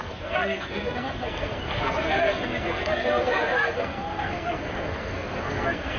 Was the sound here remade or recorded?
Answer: remade